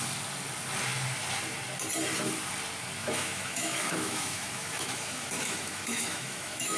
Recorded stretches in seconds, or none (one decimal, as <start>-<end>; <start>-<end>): 0.0-3.0